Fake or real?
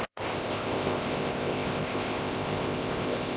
fake